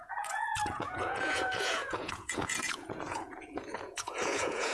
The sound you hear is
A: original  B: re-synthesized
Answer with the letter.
B